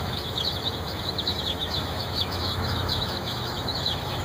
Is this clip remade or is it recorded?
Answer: remade